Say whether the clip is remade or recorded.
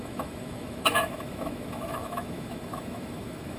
remade